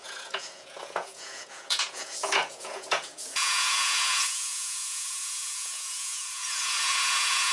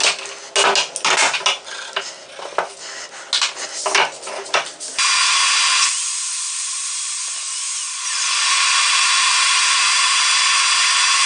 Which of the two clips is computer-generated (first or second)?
first